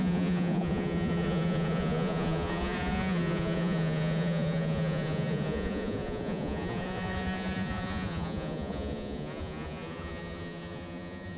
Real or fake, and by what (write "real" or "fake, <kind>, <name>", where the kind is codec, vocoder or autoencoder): fake, vocoder, Vocos